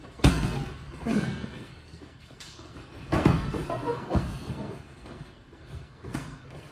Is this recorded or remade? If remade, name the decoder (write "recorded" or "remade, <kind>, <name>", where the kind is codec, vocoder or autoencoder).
remade, codec, SNAC